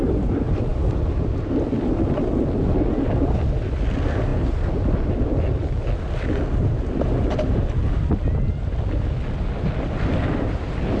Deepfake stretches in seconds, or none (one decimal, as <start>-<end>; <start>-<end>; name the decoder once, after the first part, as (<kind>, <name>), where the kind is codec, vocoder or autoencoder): none